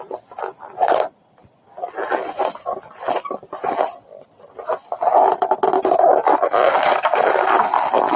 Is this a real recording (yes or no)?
yes